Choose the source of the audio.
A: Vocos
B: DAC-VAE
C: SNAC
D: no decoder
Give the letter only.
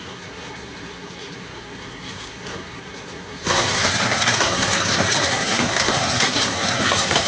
C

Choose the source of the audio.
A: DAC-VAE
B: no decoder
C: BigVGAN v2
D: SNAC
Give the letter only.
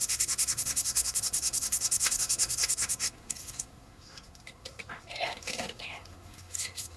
D